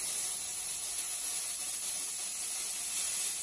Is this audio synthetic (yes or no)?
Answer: no